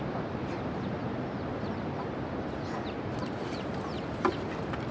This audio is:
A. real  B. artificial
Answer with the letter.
A